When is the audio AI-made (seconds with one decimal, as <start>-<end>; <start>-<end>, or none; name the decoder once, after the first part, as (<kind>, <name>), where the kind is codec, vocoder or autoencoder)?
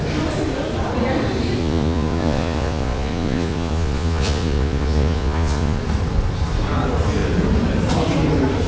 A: 1.6-5.8 (vocoder, Vocos)